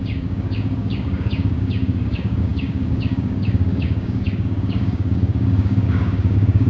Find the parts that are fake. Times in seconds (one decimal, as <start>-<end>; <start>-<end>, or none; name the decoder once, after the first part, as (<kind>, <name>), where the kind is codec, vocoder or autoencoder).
0.0-6.7 (codec, DAC)

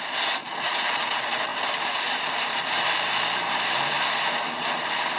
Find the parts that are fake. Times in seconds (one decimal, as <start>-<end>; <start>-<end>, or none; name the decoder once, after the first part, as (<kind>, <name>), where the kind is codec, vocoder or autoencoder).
0.4-0.9 (vocoder, BigVGAN v2); 1.5-3.9

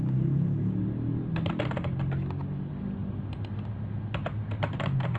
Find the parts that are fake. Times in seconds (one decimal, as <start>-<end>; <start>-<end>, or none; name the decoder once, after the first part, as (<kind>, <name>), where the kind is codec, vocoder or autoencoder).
none